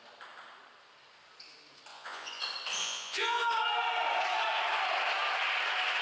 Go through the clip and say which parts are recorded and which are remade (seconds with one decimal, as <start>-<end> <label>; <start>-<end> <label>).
0.0-1.9 recorded; 1.9-2.4 remade; 2.4-2.8 recorded; 2.8-3.4 remade; 3.4-6.0 recorded